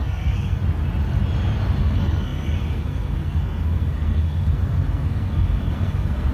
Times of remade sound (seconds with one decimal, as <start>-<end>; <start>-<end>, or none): 0.0-0.6; 1.8-6.3